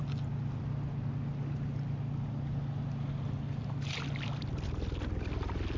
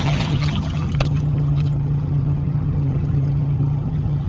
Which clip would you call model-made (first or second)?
second